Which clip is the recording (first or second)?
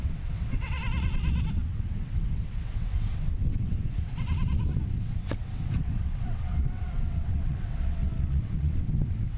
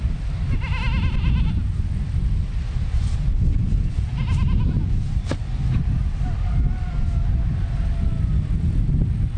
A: second